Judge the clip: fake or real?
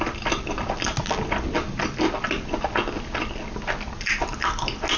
real